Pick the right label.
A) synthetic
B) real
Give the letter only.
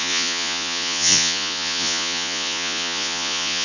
A